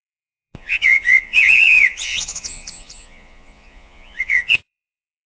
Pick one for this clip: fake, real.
fake